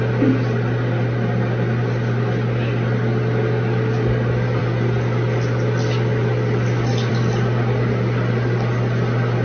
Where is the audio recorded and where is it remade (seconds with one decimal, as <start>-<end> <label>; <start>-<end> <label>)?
0.0-9.4 recorded